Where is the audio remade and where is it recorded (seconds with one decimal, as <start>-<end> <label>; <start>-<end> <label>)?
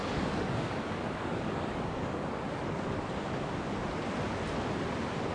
0.0-3.1 remade; 3.1-5.3 recorded